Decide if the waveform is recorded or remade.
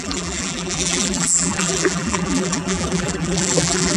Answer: remade